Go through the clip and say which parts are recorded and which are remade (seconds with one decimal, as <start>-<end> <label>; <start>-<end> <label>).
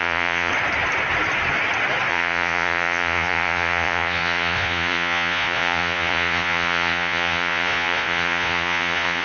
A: 0.0-0.5 remade; 0.5-2.1 recorded; 2.1-9.2 remade